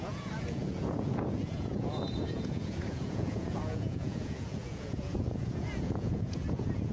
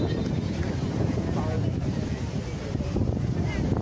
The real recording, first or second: second